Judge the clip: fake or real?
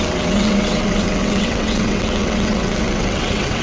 fake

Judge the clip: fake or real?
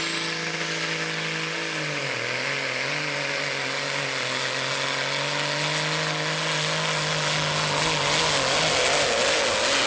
real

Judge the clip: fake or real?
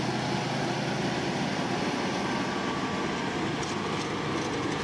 real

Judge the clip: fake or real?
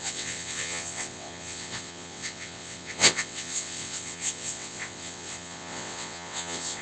fake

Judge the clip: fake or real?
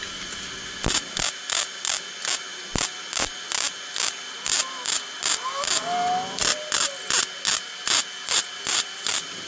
real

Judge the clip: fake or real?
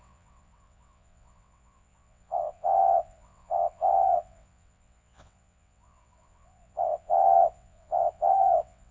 fake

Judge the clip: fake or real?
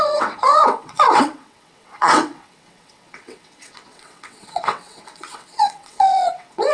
fake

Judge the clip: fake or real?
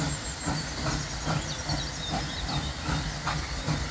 real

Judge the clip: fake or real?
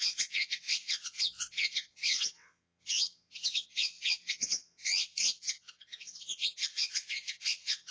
fake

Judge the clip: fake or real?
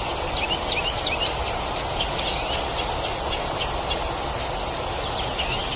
real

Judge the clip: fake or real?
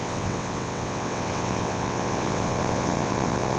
fake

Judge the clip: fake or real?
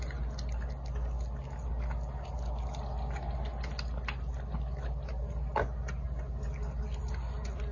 real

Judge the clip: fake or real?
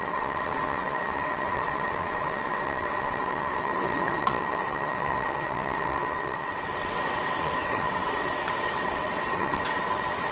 fake